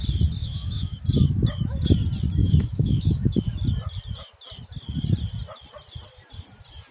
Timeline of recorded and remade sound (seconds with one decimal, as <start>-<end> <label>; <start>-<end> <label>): 0.0-0.4 recorded; 0.4-1.0 remade; 1.0-2.4 recorded; 2.4-3.5 remade; 3.5-6.9 recorded